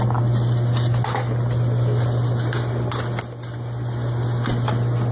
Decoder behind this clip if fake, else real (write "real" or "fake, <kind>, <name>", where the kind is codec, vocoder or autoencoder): real